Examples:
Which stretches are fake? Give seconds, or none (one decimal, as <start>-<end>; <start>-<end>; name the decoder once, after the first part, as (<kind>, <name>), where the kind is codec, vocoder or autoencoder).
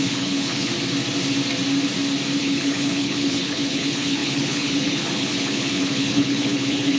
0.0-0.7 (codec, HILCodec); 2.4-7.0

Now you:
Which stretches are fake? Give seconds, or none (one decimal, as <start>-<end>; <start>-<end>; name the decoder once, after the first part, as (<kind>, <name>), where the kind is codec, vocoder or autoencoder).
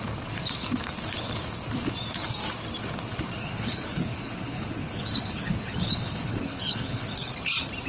3.4-7.3 (codec, HILCodec)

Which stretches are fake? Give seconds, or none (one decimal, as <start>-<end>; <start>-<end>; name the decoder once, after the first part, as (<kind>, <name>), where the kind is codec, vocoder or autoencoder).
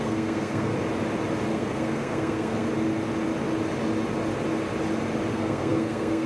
0.0-0.7 (codec, SNAC); 1.5-2.7; 5.3-6.3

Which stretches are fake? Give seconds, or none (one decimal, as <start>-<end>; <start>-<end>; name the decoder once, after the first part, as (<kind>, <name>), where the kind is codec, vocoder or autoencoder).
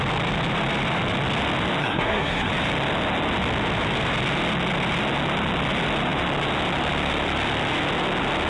1.8-2.5 (codec, SNAC)